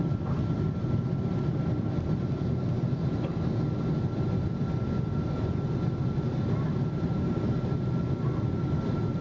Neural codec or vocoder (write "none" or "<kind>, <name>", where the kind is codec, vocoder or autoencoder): none